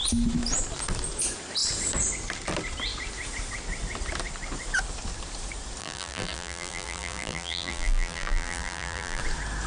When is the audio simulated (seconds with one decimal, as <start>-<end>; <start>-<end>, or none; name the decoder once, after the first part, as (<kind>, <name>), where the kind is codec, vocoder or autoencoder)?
5.8-9.2 (vocoder, BigVGAN v2)